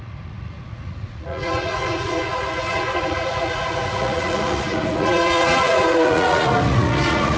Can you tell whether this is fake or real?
fake